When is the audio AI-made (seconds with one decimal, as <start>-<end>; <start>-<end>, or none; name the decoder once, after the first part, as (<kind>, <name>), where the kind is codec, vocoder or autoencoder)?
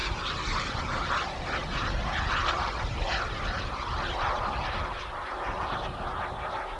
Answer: none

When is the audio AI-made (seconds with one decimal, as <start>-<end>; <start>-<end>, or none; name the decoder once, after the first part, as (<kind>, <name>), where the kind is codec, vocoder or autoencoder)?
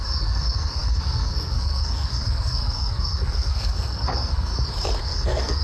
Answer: 0.0-4.5 (codec, SNAC); 5.0-5.6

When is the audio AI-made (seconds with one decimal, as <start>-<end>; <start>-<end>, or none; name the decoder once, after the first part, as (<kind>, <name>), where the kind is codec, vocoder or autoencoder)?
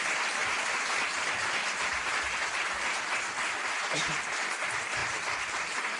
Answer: none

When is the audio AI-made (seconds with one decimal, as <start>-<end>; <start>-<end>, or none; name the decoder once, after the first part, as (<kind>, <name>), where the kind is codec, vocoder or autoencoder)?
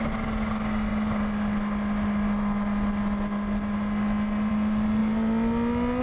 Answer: none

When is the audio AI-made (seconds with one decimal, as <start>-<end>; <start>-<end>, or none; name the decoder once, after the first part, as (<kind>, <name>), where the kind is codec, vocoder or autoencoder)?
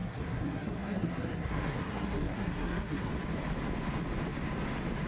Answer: 0.0-3.1 (codec, SNAC)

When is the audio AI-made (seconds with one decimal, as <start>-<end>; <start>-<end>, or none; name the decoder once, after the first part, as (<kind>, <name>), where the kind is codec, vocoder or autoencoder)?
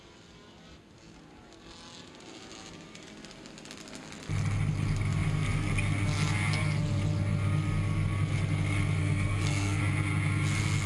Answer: 9.0-9.8 (codec, SNAC)